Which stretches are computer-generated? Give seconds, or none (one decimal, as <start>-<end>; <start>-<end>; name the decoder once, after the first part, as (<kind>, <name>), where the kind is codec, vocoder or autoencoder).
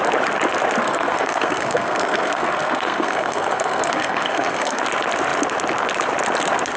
0.8-4.8 (codec, SNAC)